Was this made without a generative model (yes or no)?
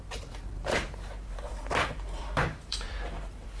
no